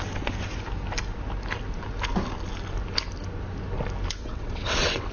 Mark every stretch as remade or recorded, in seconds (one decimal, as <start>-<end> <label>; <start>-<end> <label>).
0.0-4.2 recorded; 4.2-5.1 remade

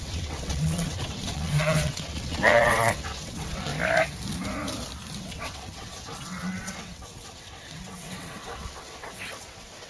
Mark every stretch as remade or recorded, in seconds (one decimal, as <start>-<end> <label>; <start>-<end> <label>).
0.0-3.7 remade; 3.7-5.2 recorded; 5.2-9.9 remade

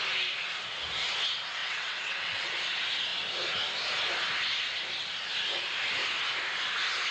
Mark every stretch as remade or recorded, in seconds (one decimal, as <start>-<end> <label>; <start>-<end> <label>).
0.0-1.6 recorded; 1.6-2.5 remade; 2.5-7.1 recorded

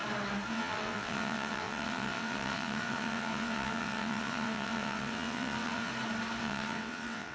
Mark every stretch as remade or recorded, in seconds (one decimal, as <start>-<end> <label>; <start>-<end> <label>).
0.0-0.5 recorded; 0.5-5.9 remade; 5.9-6.4 recorded; 6.4-7.3 remade

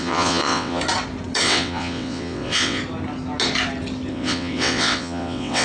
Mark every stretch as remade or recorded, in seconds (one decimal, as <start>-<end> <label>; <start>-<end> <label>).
0.0-0.8 remade; 0.8-1.4 recorded; 1.4-2.8 remade; 2.8-4.1 recorded; 4.1-5.6 remade

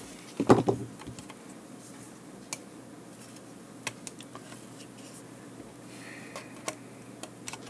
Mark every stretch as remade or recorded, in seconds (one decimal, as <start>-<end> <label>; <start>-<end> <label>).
0.0-7.7 recorded

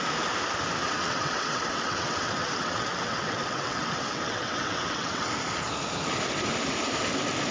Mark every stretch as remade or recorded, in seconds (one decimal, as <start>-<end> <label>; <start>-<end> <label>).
0.0-0.8 recorded; 0.8-5.3 remade; 5.3-7.5 recorded